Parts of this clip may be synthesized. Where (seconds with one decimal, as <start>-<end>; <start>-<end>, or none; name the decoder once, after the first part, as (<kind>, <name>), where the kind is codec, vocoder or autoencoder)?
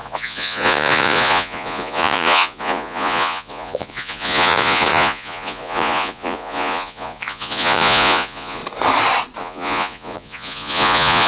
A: 0.0-8.6 (vocoder, Vocos); 9.4-11.3